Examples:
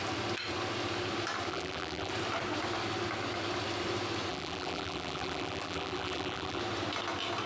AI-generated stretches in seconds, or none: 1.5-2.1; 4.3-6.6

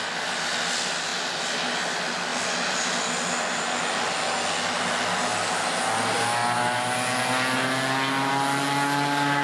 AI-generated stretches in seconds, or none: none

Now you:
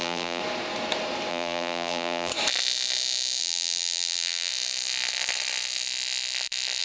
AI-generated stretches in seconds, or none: 0.0-0.4; 1.3-2.3; 3.4-4.5

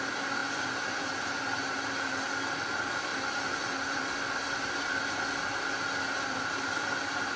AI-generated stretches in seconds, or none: 0.4-2.1

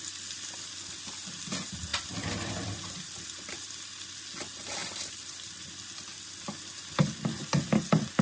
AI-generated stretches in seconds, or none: 1.9-3.7; 4.8-5.7

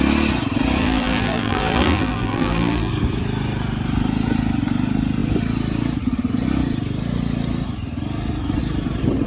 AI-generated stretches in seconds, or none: 0.8-2.9

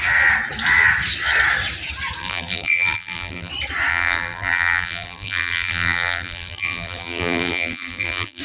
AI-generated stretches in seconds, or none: 2.2-3.5; 3.9-8.4

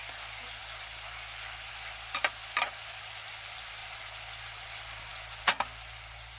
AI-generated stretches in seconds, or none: none